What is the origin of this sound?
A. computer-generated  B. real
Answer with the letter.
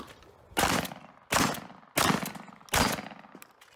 B